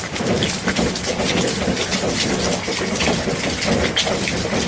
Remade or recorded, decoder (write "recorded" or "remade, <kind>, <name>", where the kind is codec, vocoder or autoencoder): recorded